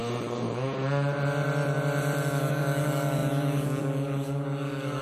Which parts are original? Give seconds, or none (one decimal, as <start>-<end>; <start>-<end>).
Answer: 0.0-2.3